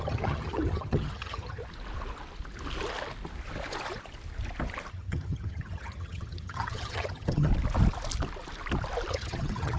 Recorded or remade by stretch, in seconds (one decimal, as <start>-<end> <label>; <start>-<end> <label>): 0.0-1.6 remade; 1.6-4.9 recorded; 4.9-7.5 remade; 7.5-9.1 recorded; 9.1-9.8 remade